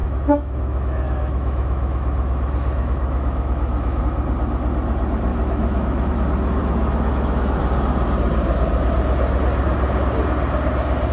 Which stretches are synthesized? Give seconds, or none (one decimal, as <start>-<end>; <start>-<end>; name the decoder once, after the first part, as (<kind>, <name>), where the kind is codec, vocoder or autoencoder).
0.0-4.0 (autoencoder, DAC-VAE); 5.3-6.1; 6.6-7.6